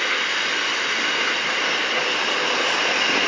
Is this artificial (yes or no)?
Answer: no